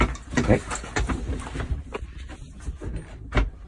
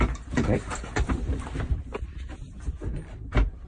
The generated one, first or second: second